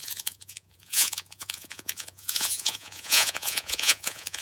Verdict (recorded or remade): remade